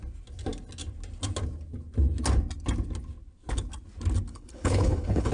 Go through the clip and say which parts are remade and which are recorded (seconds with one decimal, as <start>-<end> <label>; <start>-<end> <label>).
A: 0.0-4.3 recorded; 4.3-5.3 remade